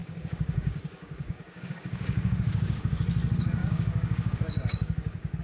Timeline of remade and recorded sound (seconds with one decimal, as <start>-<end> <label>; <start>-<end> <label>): 0.0-3.0 remade; 3.0-3.6 recorded; 3.6-5.4 remade